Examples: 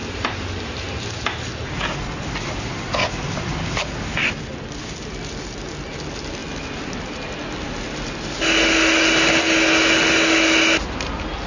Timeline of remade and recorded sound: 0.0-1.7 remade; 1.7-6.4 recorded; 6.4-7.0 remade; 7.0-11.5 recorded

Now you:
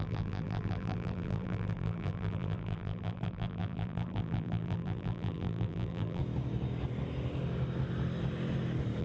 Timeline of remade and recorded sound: 0.0-6.2 remade; 6.2-9.0 recorded